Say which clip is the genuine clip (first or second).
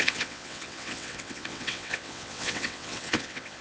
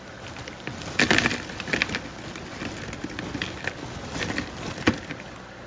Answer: second